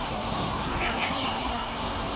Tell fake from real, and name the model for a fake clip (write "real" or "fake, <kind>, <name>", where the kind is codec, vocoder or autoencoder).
fake, codec, SNAC